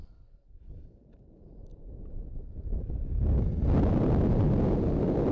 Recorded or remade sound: recorded